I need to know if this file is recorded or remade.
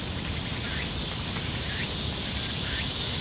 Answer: recorded